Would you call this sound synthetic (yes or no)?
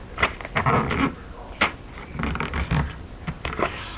no